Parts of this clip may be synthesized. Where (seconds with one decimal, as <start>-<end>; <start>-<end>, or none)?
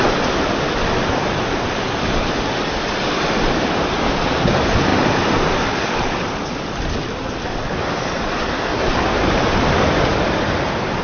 none